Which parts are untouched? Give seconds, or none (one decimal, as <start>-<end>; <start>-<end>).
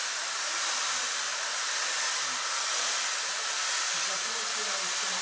0.0-5.2